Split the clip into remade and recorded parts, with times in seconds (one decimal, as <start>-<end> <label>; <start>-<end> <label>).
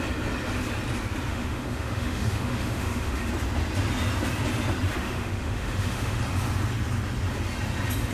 0.0-1.3 recorded; 1.3-3.3 remade; 3.3-5.0 recorded; 5.0-6.2 remade; 6.2-8.1 recorded